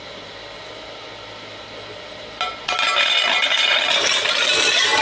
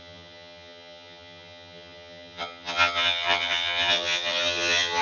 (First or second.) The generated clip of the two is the second